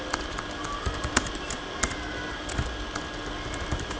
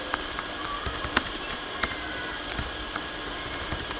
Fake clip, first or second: second